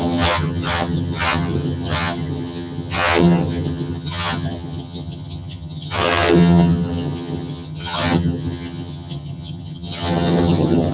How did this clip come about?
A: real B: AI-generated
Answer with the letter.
B